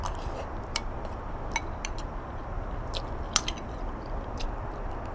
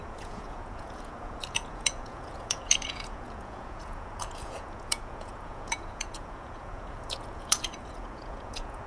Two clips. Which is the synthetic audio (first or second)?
second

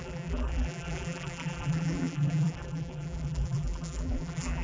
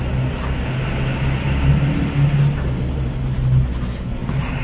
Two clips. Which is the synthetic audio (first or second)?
first